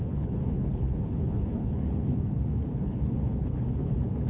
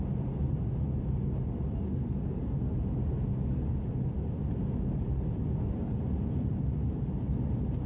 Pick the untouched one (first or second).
second